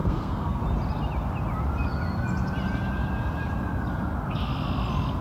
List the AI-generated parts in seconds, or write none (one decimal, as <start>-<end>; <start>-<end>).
0.0-0.6